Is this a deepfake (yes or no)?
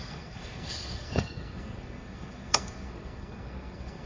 yes